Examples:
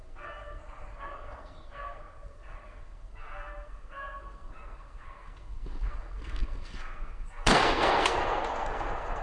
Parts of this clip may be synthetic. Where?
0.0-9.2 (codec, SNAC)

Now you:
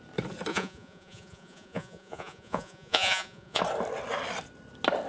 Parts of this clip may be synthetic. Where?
0.5-3.6 (vocoder, Vocos)

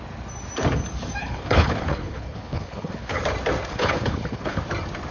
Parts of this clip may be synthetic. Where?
1.2-3.2 (codec, HILCodec); 3.7-4.6

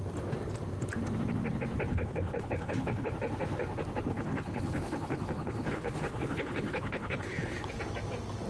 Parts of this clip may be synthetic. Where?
1.9-3.1 (codec, HILCodec); 4.1-7.8

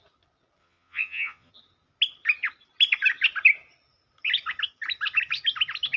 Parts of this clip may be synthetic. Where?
0.6-1.5 (vocoder, Vocos)

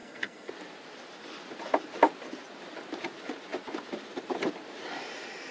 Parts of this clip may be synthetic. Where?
0.0-0.5 (codec, SNAC)